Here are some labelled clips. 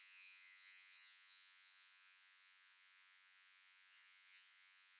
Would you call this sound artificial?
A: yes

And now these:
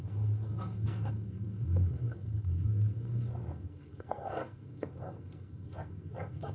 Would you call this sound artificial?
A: yes